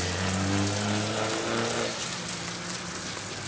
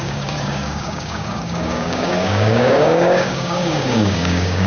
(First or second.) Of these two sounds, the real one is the first